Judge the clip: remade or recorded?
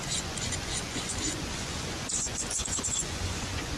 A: remade